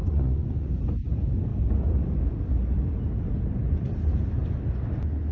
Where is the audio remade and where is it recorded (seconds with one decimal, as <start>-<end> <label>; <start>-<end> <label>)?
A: 0.0-0.7 remade; 0.7-5.3 recorded